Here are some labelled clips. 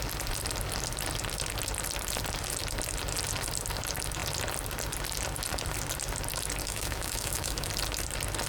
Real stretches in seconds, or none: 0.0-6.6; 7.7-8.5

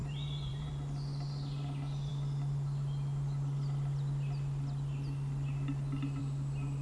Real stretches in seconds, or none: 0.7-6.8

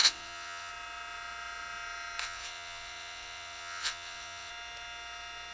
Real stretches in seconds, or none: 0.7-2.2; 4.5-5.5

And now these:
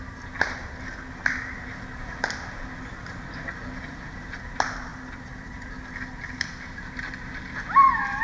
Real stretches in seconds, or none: 0.0-8.2

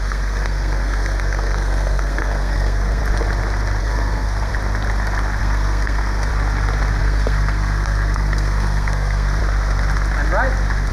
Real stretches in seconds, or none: 3.0-3.8; 4.5-5.4; 6.3-7.0; 9.4-10.9